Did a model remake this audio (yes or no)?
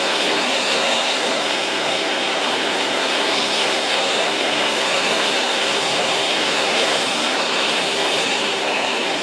yes